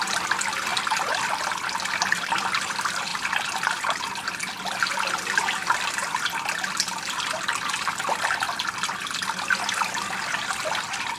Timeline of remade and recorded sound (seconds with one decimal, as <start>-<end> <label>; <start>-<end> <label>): 0.0-0.7 remade; 0.7-1.3 recorded; 1.3-3.1 remade; 3.1-4.9 recorded; 4.9-6.0 remade; 6.0-6.9 recorded; 6.9-11.2 remade